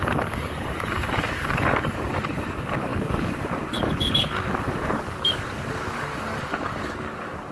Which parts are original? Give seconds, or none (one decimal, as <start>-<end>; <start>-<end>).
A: none